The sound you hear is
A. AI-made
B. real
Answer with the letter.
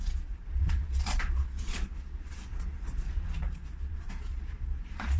A